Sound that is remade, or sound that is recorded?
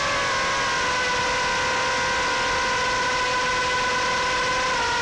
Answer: recorded